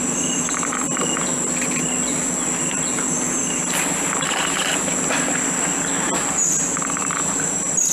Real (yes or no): yes